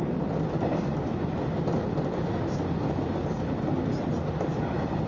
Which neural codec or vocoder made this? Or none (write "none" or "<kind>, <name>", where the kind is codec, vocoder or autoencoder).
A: none